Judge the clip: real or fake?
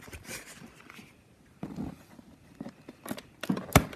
real